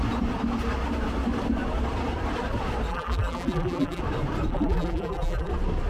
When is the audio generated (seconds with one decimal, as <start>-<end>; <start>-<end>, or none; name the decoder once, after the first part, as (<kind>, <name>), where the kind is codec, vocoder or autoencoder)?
2.9-4.0 (vocoder, BigVGAN v2); 4.5-5.5